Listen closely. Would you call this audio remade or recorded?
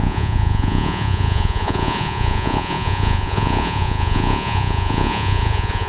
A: remade